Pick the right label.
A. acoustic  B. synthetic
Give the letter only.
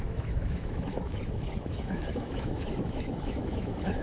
B